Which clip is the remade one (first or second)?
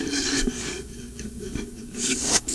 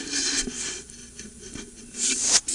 first